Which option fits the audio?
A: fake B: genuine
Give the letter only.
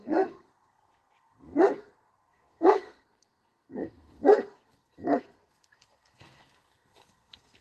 A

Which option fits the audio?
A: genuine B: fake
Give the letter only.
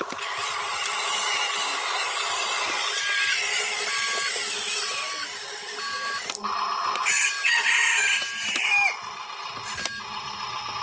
A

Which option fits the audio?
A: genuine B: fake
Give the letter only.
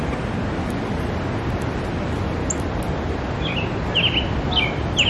A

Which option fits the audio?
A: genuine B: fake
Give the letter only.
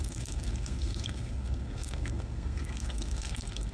B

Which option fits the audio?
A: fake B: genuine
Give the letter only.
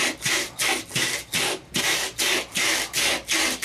B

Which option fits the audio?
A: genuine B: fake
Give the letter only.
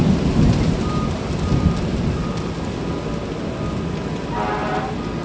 A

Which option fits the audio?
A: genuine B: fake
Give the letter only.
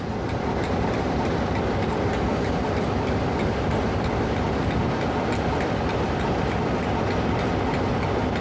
A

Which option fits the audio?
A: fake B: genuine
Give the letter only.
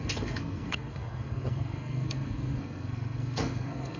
A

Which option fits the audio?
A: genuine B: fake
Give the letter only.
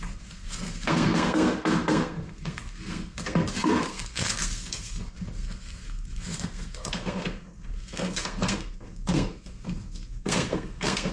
B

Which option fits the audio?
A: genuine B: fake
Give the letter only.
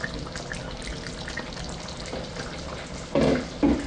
A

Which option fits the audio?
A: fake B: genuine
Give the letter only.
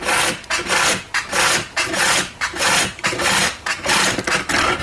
B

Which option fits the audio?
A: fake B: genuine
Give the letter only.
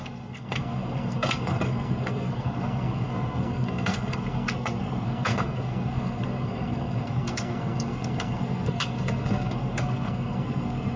A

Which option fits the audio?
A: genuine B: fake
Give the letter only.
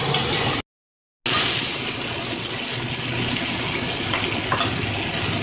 A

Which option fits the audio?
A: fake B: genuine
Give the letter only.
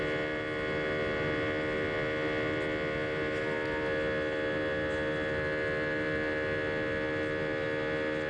B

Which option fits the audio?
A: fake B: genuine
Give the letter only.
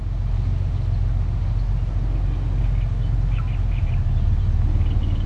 B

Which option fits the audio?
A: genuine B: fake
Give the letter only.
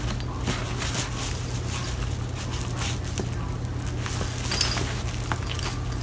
A